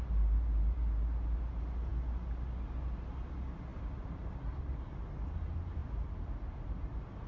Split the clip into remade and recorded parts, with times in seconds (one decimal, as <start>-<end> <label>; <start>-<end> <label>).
0.0-5.8 recorded; 5.8-7.3 remade